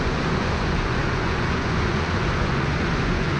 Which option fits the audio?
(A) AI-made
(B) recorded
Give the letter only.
A